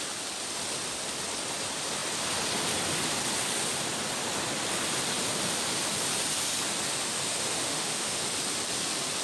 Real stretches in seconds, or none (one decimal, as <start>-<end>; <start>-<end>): 0.0-7.5; 8.2-9.2